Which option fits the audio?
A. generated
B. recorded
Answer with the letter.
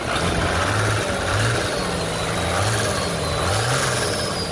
B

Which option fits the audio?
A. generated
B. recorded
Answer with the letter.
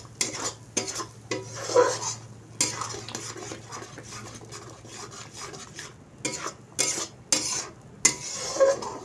B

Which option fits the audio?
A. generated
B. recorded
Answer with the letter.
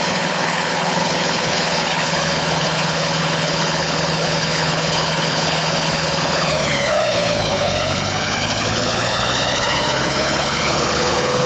A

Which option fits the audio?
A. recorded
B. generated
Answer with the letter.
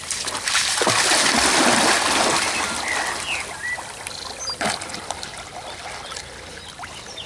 A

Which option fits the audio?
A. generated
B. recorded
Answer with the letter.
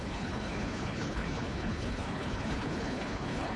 A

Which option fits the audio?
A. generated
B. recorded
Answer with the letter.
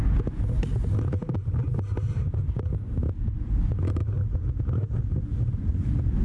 B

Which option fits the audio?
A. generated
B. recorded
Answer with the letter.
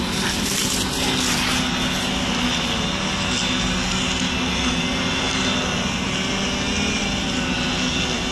B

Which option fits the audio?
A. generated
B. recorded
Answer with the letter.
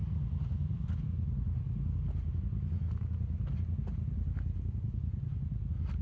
B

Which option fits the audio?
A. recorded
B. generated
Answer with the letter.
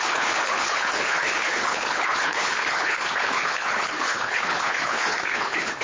B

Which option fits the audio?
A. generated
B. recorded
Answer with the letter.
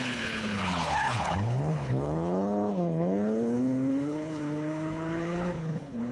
A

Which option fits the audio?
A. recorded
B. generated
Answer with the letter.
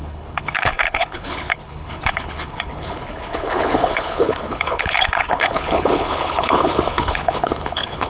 B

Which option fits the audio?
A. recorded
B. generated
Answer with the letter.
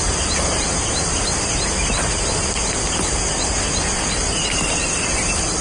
A